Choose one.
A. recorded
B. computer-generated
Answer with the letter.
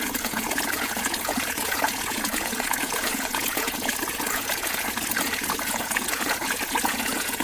B